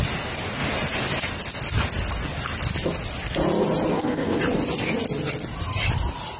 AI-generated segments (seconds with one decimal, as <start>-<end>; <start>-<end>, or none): 3.9-4.4